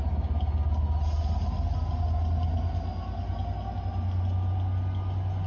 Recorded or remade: recorded